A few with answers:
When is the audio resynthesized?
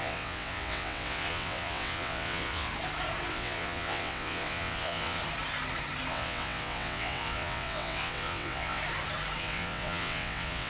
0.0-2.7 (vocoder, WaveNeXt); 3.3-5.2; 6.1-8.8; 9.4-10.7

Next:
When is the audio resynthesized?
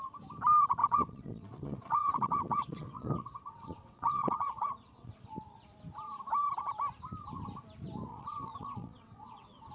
0.8-5.3 (vocoder, WaveNeXt); 8.1-9.7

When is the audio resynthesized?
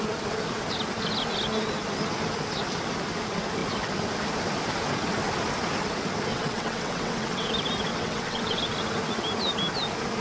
6.3-7.5 (vocoder, WaveNeXt); 7.9-8.6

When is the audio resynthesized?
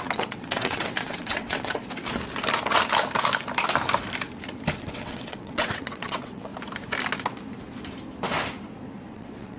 0.0-1.8 (vocoder, WaveNeXt); 4.8-6.5; 9.1-9.6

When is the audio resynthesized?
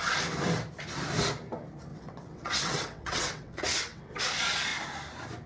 1.9-4.2 (vocoder, WaveNeXt)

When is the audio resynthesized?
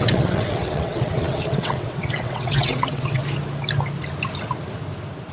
0.0-3.2 (vocoder, WaveNeXt)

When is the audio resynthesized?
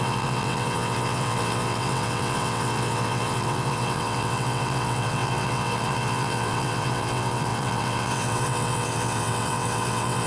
0.0-10.3 (vocoder, WaveNeXt)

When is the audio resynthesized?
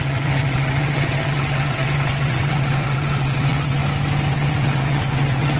0.0-3.8 (vocoder, WaveNeXt); 4.3-5.6